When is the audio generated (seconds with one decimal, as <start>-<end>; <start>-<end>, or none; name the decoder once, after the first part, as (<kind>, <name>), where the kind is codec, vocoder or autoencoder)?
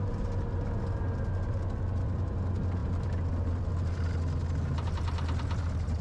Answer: 2.8-3.7 (vocoder, BigVGAN v2)